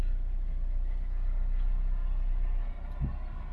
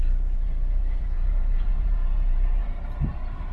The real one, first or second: first